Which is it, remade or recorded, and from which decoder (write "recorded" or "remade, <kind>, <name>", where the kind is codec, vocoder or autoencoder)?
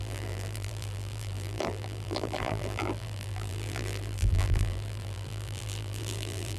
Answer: remade, vocoder, BigVGAN v2